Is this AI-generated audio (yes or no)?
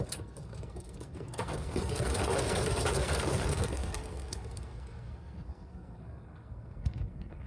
yes